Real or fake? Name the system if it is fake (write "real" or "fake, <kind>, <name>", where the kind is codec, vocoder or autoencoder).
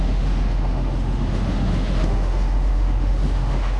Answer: fake, autoencoder, DAC-VAE